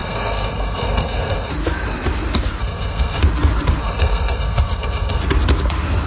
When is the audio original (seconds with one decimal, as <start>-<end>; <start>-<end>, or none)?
1.5-2.6; 3.2-3.8; 5.2-6.1